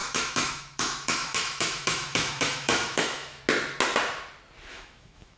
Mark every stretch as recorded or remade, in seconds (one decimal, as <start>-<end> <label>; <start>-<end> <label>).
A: 0.0-3.4 remade; 3.4-4.7 recorded; 4.7-5.4 remade